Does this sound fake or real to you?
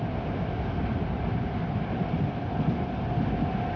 real